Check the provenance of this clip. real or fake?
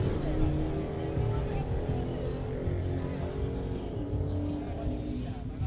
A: real